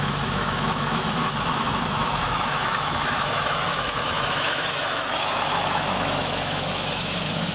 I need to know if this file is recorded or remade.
remade